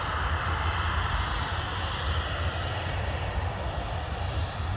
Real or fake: fake